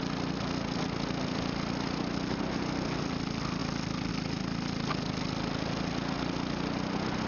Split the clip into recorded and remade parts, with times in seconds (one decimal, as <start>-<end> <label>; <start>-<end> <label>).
0.0-7.3 recorded